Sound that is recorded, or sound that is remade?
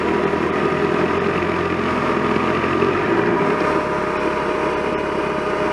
recorded